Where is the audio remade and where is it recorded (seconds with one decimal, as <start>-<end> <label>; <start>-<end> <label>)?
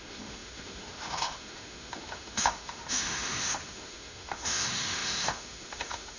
0.0-6.2 remade